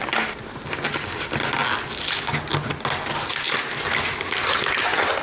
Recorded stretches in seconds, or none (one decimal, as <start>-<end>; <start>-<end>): 0.0-5.2

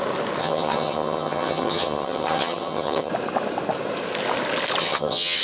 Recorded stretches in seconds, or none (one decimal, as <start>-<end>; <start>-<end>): 0.0-0.4; 3.1-4.8

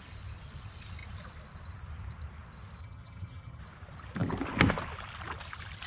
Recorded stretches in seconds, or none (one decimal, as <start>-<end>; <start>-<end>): 0.0-2.8; 3.6-5.9

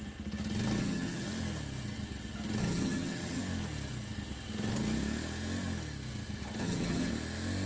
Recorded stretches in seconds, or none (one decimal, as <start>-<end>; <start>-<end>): 0.0-0.8; 1.3-2.6; 3.4-6.6; 7.1-7.7

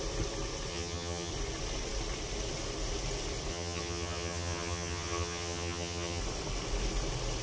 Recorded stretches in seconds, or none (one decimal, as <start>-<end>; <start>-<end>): 0.0-0.7; 1.3-3.5; 6.2-7.4